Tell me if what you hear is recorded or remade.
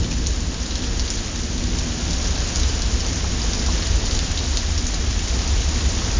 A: recorded